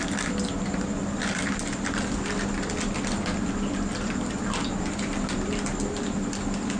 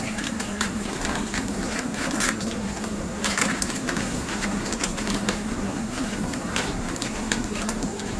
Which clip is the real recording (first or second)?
first